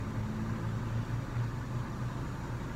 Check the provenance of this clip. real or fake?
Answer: real